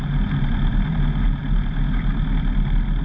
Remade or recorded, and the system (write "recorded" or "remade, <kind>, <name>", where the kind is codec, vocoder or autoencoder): recorded